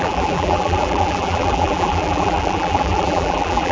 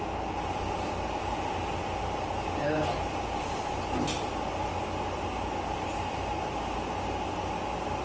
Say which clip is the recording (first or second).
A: second